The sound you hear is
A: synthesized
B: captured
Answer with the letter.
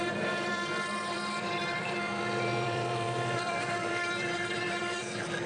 A